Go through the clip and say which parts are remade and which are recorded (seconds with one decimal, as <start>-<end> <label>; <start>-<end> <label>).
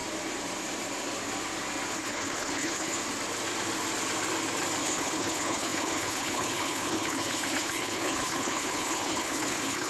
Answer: 0.0-1.9 recorded; 1.9-3.0 remade; 3.0-4.8 recorded; 4.8-9.9 remade